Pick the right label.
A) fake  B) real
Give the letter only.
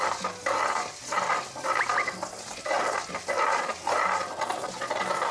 B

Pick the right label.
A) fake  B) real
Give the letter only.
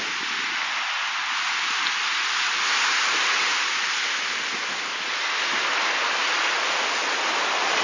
B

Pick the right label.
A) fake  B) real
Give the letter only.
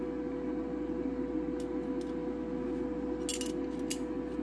B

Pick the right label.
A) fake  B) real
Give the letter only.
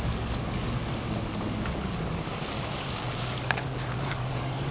A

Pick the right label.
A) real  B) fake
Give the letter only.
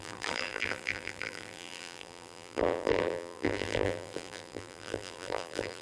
B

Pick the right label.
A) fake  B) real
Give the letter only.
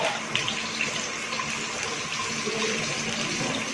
B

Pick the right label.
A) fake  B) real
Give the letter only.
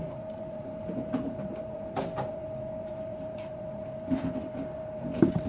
A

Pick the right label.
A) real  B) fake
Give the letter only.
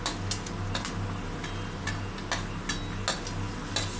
A